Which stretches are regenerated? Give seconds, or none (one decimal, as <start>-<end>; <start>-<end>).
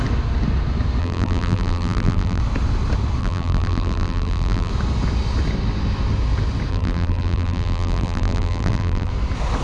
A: 1.0-2.4; 3.2-4.7; 6.7-9.1